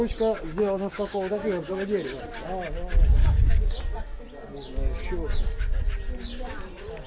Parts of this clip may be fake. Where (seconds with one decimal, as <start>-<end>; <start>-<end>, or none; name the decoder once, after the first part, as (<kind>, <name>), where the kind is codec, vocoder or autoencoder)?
0.6-1.7 (codec, DAC); 3.2-3.8

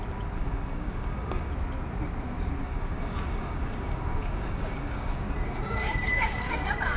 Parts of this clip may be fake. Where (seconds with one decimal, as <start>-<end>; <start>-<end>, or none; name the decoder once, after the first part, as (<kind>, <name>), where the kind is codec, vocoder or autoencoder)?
0.4-1.5 (codec, DAC); 2.6-7.0